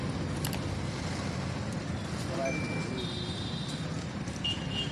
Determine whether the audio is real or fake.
real